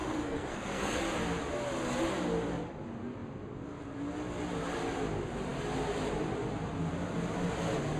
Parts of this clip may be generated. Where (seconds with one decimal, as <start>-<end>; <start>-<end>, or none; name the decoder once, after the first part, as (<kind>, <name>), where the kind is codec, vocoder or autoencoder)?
0.0-1.0 (codec, SNAC)